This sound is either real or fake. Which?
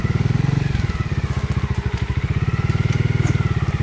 real